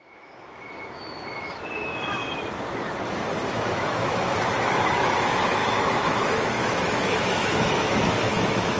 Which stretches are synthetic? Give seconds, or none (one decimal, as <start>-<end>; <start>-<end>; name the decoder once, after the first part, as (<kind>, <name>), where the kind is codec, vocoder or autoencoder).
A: 0.0-2.2 (autoencoder, DAC-VAE); 3.5-8.8